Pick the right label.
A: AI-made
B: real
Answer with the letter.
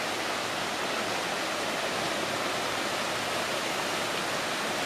B